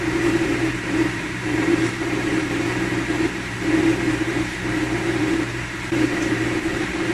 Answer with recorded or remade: remade